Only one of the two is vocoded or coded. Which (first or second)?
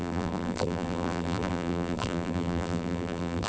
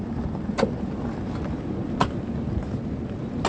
first